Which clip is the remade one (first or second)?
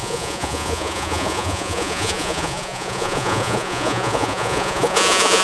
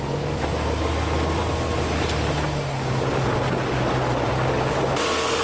first